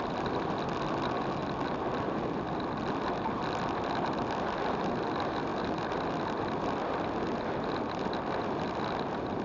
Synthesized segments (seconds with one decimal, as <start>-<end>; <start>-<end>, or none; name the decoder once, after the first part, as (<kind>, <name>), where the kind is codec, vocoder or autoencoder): none